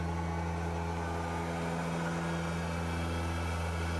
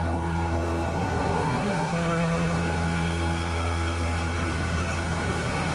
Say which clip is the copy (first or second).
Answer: second